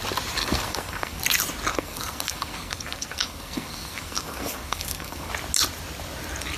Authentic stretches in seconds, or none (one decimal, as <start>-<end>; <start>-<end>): 0.0-0.4; 1.2-1.7; 5.3-6.6